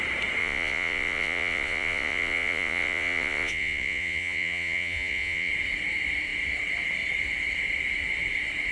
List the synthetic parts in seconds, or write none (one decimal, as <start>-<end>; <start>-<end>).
0.4-5.5